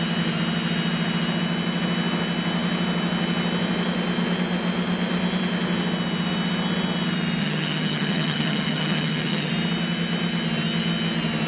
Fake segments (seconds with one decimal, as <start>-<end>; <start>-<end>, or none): 7.4-9.5

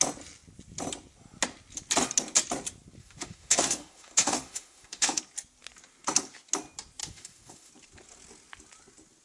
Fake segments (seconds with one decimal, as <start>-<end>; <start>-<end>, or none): 3.0-5.2; 7.0-7.7

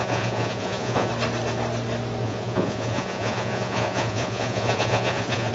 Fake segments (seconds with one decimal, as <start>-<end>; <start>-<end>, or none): 0.0-1.1; 2.2-5.5

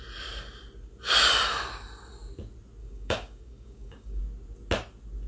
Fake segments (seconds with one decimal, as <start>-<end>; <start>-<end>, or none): 2.8-4.2